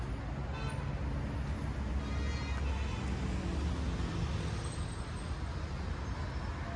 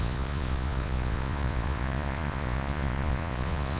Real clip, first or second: first